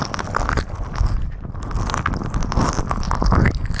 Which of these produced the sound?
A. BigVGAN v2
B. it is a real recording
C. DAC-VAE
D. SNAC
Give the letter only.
B